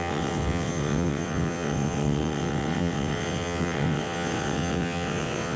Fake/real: fake